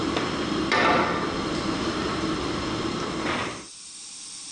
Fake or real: fake